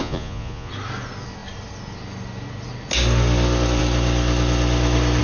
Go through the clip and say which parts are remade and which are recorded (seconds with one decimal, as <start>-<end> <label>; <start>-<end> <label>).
0.0-0.7 remade; 0.7-5.2 recorded